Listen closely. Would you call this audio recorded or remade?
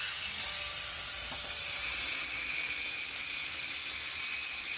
recorded